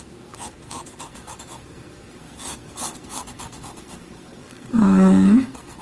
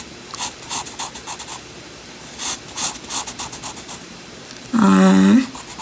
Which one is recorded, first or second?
second